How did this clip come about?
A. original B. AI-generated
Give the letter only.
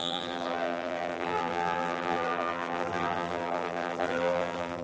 B